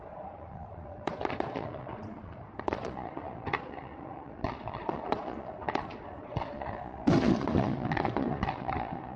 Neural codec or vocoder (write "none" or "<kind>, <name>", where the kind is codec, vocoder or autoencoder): vocoder, Vocos